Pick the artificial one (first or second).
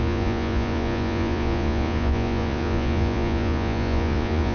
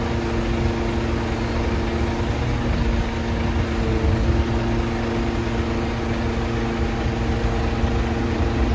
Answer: first